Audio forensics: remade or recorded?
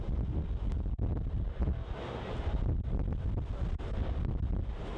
recorded